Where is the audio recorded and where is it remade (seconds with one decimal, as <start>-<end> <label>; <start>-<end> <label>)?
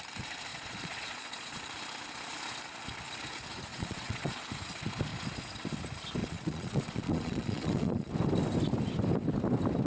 0.0-0.5 recorded; 0.5-1.6 remade; 1.6-3.7 recorded; 3.7-4.4 remade; 4.4-6.2 recorded; 6.2-8.1 remade; 8.1-9.9 recorded